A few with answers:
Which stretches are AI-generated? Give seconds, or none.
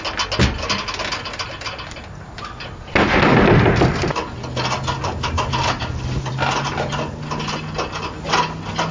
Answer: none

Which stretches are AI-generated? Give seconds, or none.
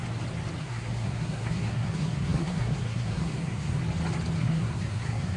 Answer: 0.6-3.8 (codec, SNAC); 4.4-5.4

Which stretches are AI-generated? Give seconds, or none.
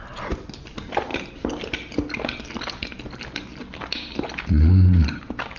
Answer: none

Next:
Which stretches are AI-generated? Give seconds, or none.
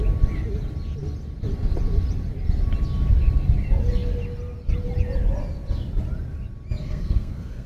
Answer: 6.8-7.7 (codec, SNAC)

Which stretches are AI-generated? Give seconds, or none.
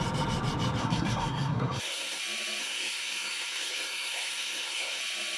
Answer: 0.8-2.2 (codec, SNAC); 2.6-5.0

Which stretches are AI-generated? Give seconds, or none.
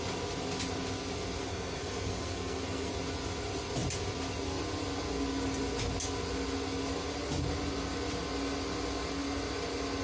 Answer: 1.4-2.9 (codec, SNAC)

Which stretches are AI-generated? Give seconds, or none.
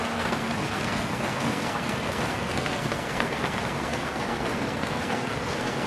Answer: 0.0-5.9 (codec, SNAC)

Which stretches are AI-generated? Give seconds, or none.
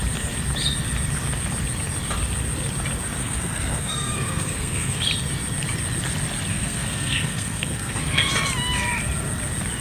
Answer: 3.2-5.0 (codec, SNAC); 6.5-8.3